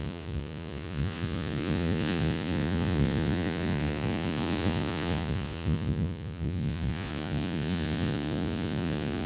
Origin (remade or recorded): remade